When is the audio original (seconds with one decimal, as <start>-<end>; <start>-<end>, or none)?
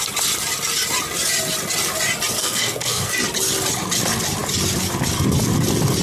0.0-2.4; 3.1-6.0